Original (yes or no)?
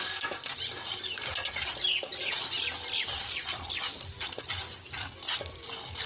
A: yes